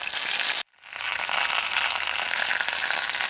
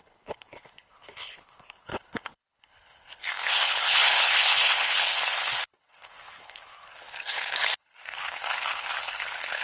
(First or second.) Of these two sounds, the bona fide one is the first